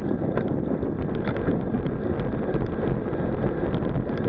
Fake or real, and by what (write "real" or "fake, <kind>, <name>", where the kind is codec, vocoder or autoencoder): fake, vocoder, BigVGAN v2